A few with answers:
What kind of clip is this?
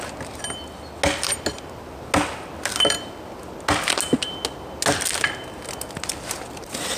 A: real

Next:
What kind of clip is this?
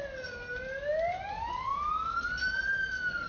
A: real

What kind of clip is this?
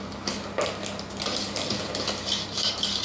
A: real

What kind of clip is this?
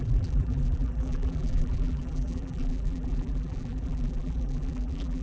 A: fake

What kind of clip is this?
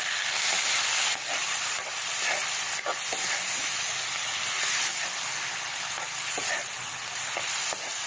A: fake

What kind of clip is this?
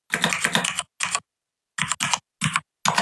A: real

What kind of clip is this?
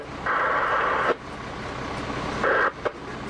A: real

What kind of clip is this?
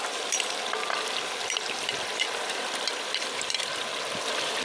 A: fake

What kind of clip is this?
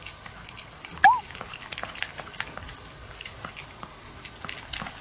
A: real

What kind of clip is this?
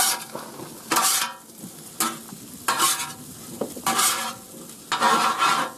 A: real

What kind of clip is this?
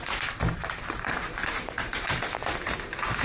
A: fake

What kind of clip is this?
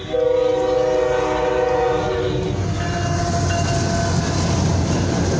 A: real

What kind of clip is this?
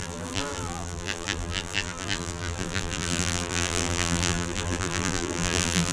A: fake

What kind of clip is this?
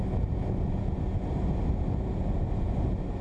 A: real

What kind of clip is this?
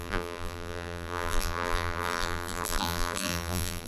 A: fake